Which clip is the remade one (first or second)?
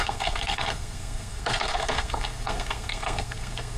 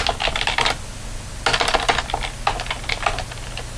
first